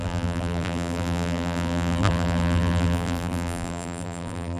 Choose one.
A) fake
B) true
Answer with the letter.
A